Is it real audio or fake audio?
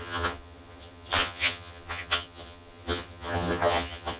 fake